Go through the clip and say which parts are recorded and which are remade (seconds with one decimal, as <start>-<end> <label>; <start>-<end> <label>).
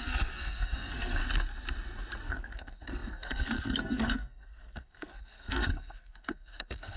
0.0-1.2 remade; 1.2-2.2 recorded; 2.2-7.0 remade